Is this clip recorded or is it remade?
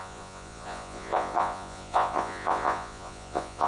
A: remade